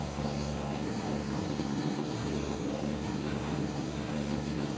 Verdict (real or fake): fake